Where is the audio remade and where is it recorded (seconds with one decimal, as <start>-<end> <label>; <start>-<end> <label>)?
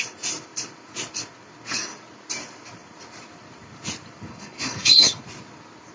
0.0-4.3 recorded; 4.3-5.2 remade; 5.2-5.9 recorded